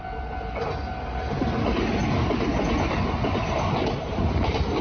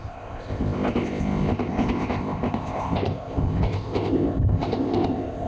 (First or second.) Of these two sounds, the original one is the first